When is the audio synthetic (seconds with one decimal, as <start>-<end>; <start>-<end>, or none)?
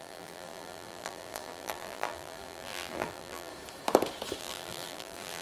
0.0-3.5; 4.4-5.4